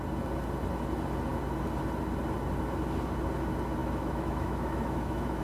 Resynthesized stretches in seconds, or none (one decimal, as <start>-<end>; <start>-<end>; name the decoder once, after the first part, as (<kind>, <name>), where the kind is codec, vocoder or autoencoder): 3.8-5.4 (autoencoder, DAC-VAE)